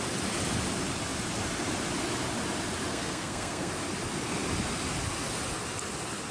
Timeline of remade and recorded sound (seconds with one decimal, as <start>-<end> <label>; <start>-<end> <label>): 0.0-2.9 recorded; 2.9-3.7 remade; 3.7-6.3 recorded